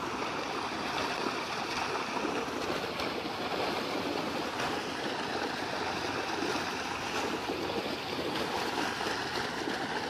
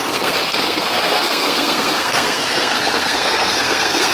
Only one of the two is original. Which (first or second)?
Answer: first